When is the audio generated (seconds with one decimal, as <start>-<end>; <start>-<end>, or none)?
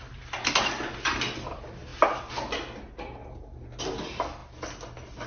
none